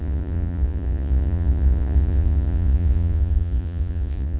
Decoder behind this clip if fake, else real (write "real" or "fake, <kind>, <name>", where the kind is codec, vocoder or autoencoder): fake, vocoder, Vocos